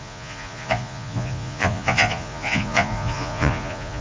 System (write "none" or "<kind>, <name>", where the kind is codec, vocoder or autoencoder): vocoder, Vocos